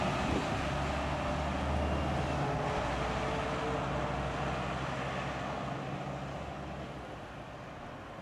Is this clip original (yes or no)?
yes